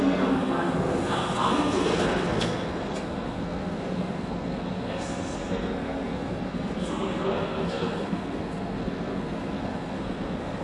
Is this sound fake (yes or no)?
yes